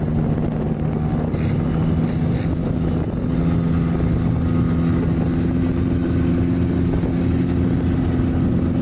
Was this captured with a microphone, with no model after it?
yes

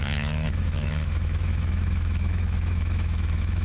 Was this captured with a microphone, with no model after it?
no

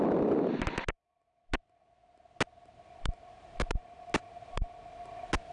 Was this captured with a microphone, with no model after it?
yes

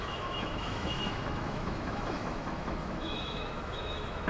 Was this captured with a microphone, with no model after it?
no